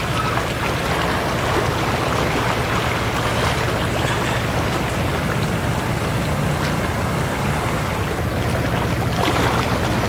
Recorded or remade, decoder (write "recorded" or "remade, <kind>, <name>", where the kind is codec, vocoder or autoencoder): recorded